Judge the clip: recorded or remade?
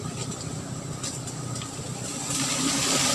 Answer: recorded